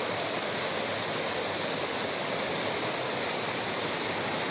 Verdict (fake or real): real